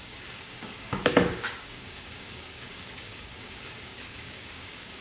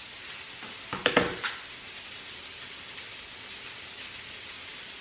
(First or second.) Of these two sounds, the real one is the second